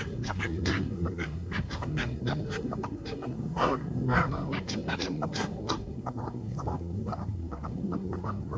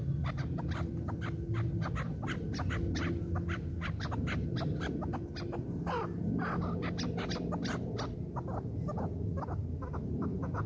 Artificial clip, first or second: first